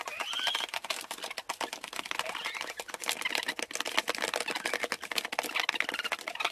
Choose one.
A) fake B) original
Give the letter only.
B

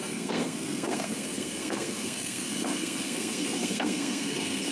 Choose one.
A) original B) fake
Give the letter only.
B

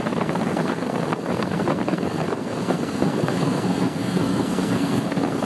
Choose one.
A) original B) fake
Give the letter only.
B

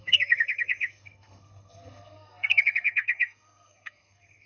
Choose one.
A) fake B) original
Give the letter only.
A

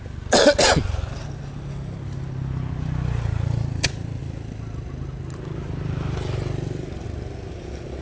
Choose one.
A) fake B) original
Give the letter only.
B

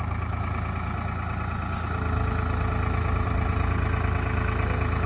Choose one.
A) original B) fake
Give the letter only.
A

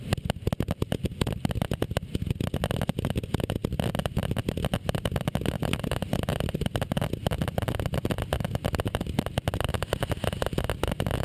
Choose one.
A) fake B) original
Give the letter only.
B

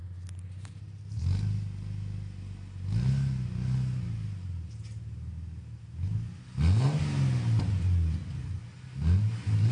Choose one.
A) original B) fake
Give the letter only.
A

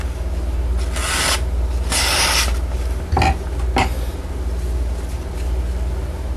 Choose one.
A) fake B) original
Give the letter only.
B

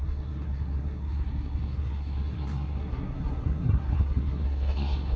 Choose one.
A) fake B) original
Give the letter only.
A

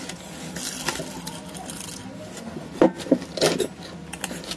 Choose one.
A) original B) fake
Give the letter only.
A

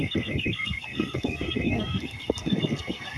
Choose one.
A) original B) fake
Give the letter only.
B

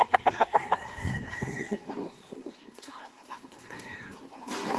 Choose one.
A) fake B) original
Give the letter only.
A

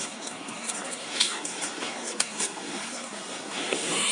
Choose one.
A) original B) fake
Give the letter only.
B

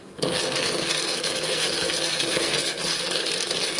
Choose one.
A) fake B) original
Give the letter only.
A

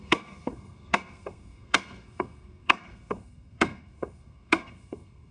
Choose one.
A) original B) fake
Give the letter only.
B